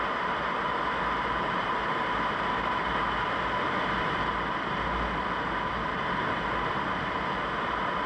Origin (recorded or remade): recorded